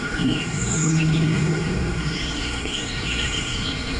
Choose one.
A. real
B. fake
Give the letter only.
B